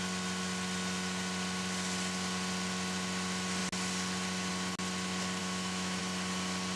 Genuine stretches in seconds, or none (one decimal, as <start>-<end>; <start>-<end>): 0.0-5.4; 6.0-6.8